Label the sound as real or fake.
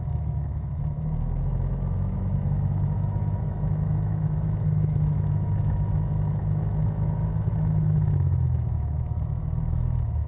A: fake